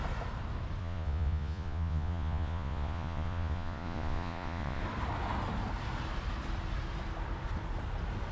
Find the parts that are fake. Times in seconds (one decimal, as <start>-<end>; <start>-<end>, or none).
0.8-4.8